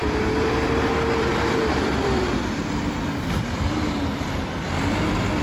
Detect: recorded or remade remade